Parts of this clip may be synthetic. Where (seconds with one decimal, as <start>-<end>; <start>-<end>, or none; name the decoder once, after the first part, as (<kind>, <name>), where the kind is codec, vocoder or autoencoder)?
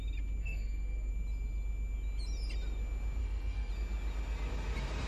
0.4-1.1 (codec, SNAC); 3.2-3.7